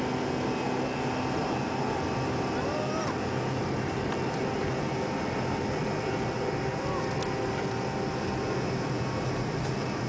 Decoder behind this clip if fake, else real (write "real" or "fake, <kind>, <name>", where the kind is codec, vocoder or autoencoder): real